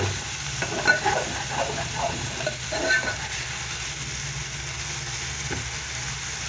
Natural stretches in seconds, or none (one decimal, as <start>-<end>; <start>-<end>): 0.0-1.6; 2.3-6.5